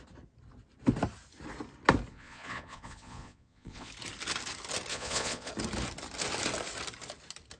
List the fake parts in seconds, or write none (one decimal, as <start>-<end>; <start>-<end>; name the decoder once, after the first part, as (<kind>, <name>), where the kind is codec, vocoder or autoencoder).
2.1-3.9 (vocoder, Vocos); 4.9-5.5